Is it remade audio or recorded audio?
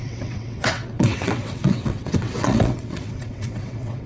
remade